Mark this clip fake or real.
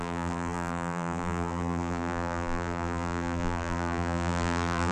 fake